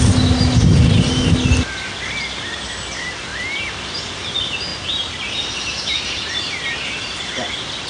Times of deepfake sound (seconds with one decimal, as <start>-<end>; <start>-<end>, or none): 4.7-5.3